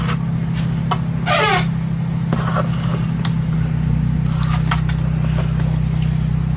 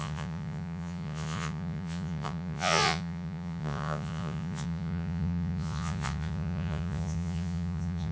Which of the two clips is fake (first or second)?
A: second